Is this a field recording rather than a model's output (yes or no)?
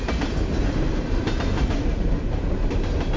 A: yes